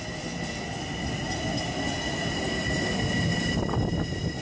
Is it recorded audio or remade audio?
recorded